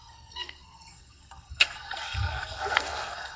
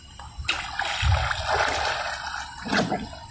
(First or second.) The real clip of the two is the second